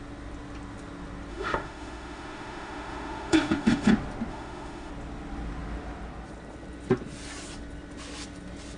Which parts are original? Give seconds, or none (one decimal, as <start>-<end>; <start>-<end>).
0.0-1.3; 3.9-4.3; 4.9-8.8